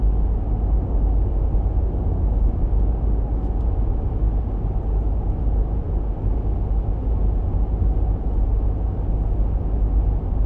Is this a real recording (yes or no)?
yes